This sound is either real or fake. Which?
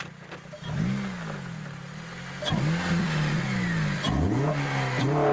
real